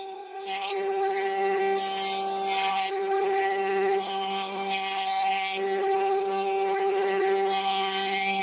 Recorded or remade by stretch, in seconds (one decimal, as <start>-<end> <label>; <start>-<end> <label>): 0.0-1.6 remade; 1.6-2.7 recorded; 2.7-8.4 remade